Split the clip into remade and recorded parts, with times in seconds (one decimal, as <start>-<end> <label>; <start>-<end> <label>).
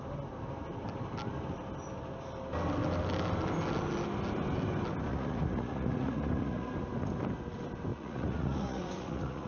0.0-5.1 recorded; 5.1-6.7 remade; 6.7-7.9 recorded; 7.9-9.5 remade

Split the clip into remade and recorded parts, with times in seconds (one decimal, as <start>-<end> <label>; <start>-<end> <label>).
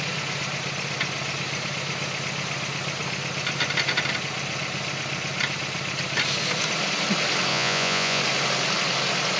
0.0-7.5 recorded; 7.5-8.2 remade; 8.2-9.4 recorded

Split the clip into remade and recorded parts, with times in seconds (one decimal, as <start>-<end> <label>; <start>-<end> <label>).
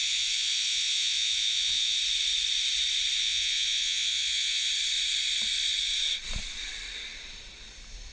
0.0-2.0 remade; 2.0-3.2 recorded; 3.2-4.7 remade; 4.7-8.1 recorded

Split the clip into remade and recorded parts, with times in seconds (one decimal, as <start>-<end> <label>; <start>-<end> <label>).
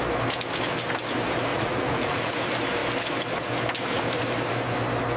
0.0-1.5 recorded; 1.5-2.3 remade; 2.3-5.2 recorded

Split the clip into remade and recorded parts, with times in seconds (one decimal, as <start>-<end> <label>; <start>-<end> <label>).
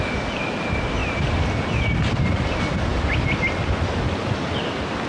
0.0-5.1 recorded